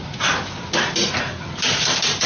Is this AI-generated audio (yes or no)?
no